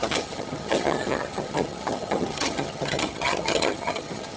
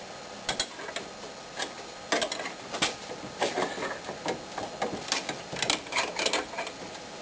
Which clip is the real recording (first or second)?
second